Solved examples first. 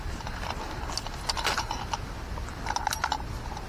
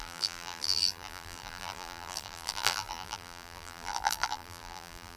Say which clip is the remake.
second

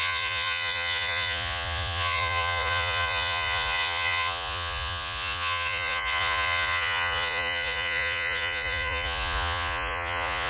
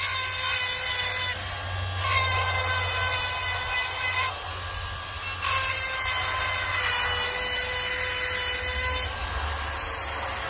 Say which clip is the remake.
first